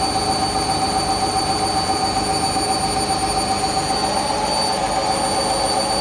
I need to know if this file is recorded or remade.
recorded